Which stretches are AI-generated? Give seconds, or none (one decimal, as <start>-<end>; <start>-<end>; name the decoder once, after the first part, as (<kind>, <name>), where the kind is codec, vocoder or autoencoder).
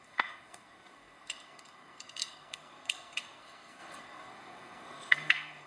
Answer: 0.0-5.7 (codec, SNAC)